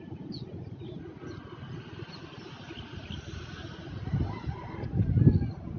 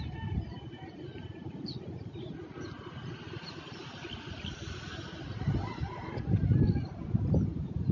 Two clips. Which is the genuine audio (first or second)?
first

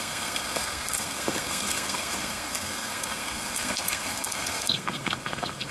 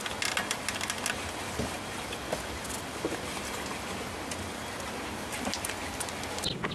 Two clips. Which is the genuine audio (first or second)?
second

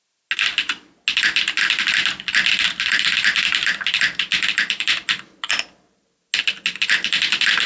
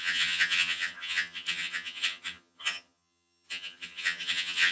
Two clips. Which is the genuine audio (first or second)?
first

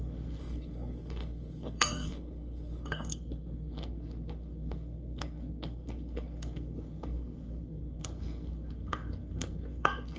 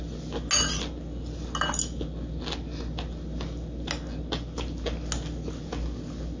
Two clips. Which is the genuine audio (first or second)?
second